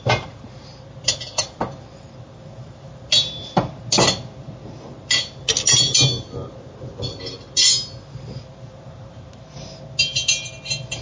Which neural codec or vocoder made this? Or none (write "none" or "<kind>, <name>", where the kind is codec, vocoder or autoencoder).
none